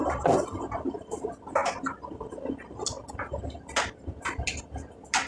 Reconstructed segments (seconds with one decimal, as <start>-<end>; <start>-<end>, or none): none